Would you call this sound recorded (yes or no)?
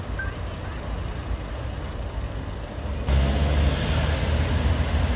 yes